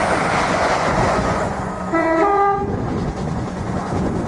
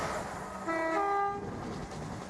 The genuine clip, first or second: second